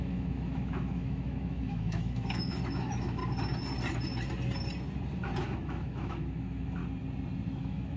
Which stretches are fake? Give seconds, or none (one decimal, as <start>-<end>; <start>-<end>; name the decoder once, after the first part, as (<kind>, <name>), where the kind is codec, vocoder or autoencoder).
0.0-3.2 (autoencoder, DAC-VAE); 5.4-6.8; 7.6-8.0